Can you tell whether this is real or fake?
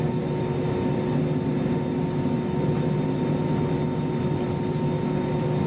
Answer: real